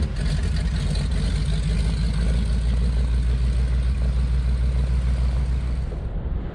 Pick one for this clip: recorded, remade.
recorded